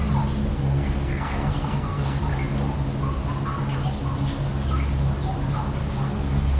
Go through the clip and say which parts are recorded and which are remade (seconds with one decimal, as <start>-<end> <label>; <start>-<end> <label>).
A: 0.0-0.5 recorded; 0.5-2.2 remade; 2.2-5.8 recorded; 5.8-6.6 remade